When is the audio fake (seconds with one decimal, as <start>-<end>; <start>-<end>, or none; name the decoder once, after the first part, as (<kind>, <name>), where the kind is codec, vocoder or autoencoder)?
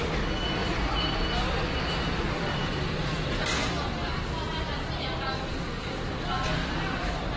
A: 0.6-3.4 (vocoder, BigVGAN v2); 4.0-5.0